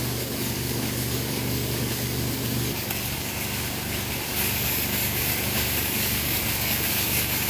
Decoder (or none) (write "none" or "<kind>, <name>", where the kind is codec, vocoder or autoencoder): codec, DAC